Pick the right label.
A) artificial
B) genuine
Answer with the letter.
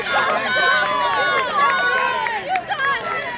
B